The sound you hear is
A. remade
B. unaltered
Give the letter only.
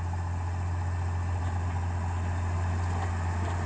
B